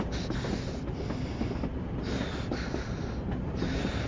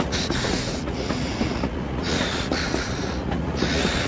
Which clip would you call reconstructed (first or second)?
second